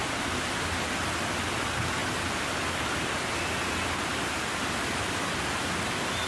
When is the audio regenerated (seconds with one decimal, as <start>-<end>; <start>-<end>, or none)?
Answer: 2.0-3.4